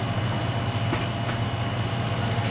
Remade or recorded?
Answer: recorded